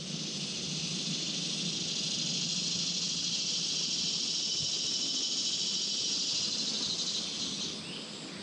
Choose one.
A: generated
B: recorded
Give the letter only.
B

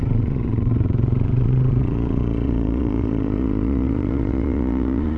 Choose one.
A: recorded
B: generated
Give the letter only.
B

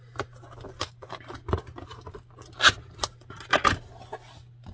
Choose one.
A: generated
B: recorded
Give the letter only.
B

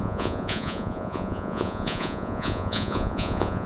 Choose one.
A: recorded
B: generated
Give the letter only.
B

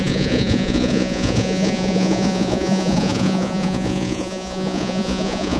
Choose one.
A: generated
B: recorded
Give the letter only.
A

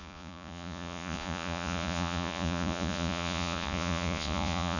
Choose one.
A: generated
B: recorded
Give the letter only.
A